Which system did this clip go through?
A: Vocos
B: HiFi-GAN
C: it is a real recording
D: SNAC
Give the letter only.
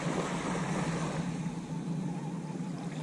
C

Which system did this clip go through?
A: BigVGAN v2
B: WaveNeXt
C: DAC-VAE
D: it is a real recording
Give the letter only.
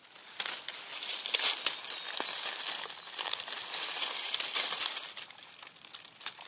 D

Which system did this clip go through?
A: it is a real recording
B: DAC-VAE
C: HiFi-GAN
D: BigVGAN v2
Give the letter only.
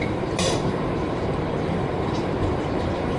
D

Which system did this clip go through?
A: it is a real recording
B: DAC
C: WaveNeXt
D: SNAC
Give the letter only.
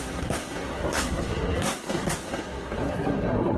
D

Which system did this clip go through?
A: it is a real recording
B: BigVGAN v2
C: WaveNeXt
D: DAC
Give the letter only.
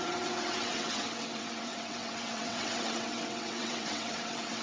C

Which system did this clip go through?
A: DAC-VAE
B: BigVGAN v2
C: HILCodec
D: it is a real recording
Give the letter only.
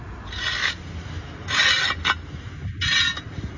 D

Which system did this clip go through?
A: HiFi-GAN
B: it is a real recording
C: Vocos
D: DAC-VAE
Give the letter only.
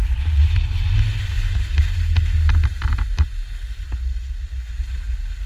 B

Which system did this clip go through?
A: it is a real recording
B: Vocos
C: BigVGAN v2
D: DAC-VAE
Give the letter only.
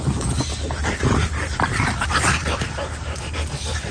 A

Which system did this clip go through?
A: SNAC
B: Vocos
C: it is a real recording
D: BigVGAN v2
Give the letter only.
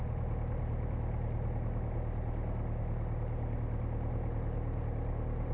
C